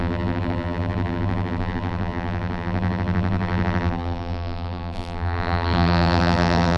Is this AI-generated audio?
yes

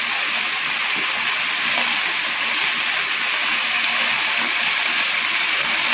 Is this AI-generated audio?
yes